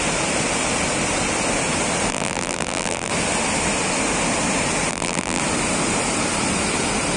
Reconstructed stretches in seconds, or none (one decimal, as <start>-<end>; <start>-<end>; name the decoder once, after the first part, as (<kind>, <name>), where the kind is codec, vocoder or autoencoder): 2.1-3.1 (vocoder, BigVGAN v2); 4.9-5.4